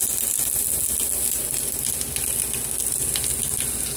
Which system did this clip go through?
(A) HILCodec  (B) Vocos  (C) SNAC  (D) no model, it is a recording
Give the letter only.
D